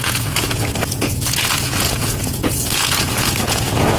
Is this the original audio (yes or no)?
no